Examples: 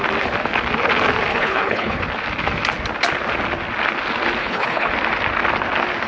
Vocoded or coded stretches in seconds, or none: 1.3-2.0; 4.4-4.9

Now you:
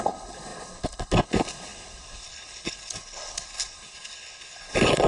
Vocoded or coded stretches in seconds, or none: 0.0-5.1

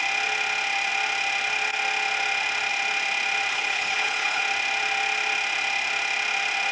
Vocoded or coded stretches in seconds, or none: 3.5-4.4

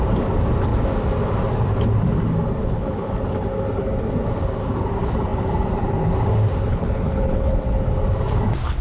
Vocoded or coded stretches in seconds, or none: 2.6-3.2; 6.7-7.6

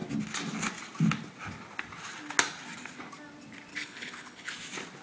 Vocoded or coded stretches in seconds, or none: 3.7-4.5

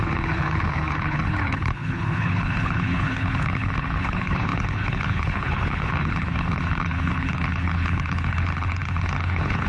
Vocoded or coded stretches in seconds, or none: 0.0-9.7